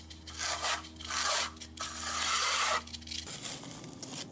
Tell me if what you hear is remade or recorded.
recorded